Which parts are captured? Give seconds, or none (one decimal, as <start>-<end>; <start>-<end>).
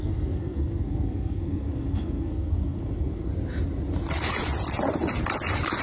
3.3-5.8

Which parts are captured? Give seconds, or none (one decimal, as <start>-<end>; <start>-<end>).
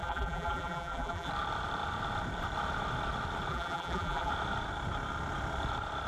1.3-3.5; 4.3-6.1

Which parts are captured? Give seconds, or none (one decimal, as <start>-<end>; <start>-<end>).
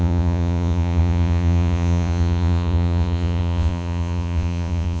none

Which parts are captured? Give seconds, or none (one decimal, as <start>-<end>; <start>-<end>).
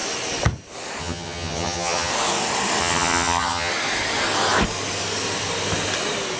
0.0-1.0; 2.1-2.8; 3.7-6.4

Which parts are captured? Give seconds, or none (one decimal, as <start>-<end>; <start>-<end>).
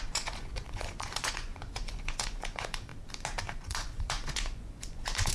2.9-3.5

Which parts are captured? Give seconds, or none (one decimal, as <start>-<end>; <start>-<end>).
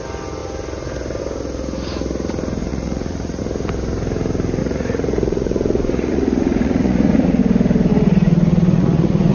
0.0-2.7; 3.4-4.6; 7.4-7.9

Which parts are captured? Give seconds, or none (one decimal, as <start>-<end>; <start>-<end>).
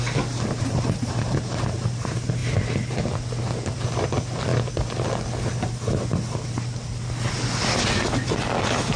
0.0-9.0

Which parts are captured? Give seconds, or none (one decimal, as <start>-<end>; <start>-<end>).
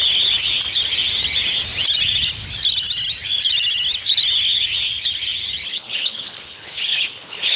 0.0-5.7